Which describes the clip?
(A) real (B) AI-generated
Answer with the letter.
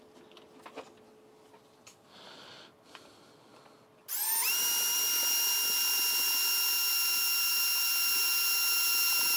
A